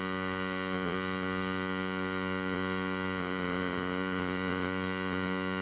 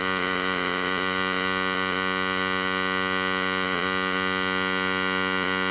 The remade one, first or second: first